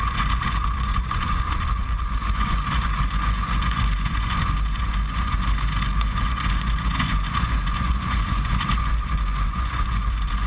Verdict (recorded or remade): remade